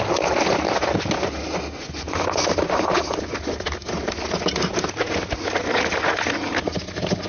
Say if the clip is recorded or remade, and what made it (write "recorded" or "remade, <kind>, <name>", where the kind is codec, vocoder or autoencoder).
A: recorded